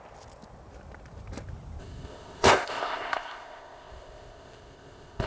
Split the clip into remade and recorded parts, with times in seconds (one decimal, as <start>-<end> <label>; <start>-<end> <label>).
0.0-1.8 recorded; 1.8-5.3 remade